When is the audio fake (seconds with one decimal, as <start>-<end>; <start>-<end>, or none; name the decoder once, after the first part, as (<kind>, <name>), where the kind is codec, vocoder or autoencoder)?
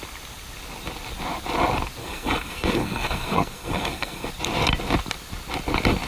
2.0-4.3 (codec, SNAC)